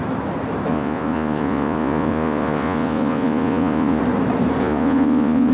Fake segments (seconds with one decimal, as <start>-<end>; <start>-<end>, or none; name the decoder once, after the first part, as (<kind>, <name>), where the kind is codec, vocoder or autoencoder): 0.7-4.0 (vocoder, Vocos); 4.6-5.5